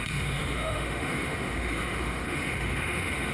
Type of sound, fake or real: fake